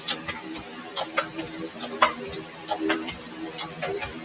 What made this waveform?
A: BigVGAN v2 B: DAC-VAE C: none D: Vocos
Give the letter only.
A